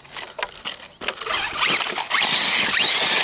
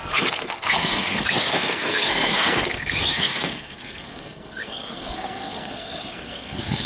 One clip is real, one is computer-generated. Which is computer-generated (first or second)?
second